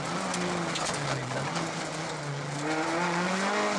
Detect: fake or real real